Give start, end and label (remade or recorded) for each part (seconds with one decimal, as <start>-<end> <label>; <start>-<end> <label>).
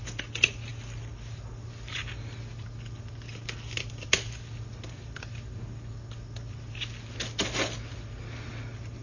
0.0-9.0 recorded